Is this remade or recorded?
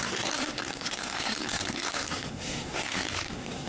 remade